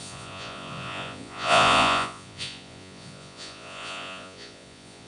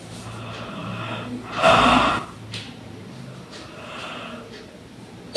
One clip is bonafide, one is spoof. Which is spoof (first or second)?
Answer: first